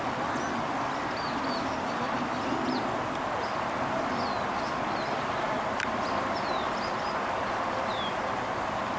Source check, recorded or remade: recorded